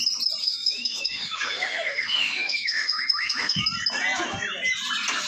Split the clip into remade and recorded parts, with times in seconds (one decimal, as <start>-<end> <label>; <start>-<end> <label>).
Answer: 0.0-0.4 recorded; 0.4-3.6 remade; 3.6-5.3 recorded